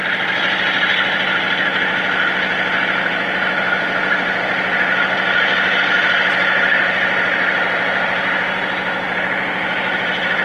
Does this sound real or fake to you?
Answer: real